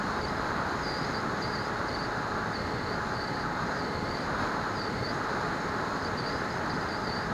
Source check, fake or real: real